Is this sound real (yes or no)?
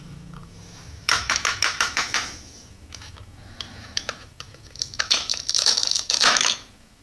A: no